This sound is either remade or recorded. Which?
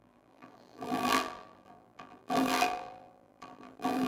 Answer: remade